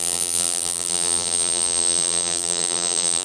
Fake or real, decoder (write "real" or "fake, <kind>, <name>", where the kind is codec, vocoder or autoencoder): fake, vocoder, BigVGAN v2